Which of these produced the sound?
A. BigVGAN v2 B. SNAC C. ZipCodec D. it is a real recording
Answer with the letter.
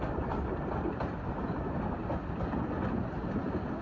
D